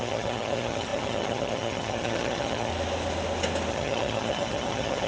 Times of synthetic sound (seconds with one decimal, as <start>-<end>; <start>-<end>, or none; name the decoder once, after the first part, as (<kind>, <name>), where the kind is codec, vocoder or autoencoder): 0.0-2.7 (vocoder, HiFi-GAN); 3.7-5.1